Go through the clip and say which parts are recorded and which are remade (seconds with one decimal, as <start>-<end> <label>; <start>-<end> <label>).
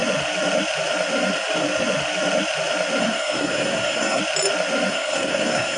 0.0-3.0 recorded; 3.0-4.2 remade; 4.2-4.9 recorded; 4.9-5.8 remade